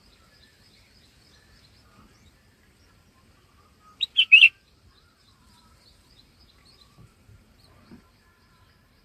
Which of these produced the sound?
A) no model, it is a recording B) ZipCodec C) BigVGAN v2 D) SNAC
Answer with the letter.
C